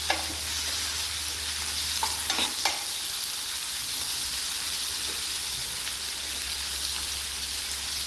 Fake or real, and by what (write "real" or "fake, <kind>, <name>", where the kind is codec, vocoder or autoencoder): real